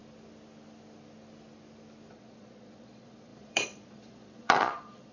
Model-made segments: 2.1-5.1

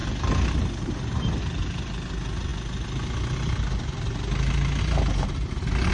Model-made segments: none

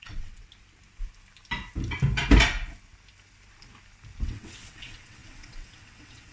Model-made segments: 0.0-0.4; 4.2-6.3

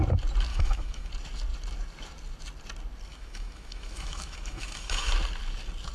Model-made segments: 0.5-1.1; 3.1-5.1

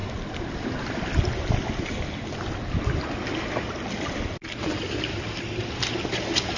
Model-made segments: none